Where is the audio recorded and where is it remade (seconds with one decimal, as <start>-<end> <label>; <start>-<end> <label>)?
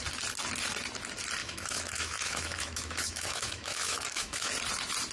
0.0-1.4 recorded; 1.4-4.5 remade; 4.5-5.1 recorded